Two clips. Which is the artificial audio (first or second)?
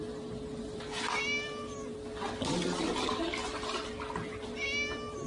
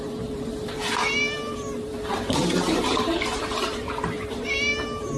second